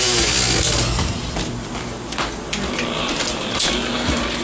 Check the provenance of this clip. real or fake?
real